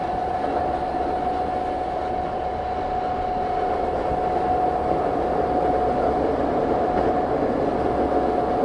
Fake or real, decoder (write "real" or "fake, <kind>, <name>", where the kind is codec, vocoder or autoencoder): real